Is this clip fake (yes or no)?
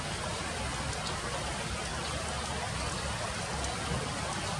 no